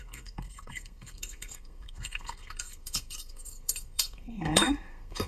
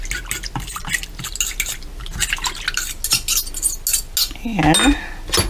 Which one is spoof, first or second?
first